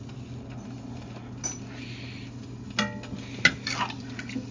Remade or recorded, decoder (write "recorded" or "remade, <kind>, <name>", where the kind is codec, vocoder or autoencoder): recorded